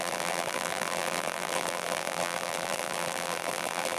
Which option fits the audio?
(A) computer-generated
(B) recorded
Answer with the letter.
A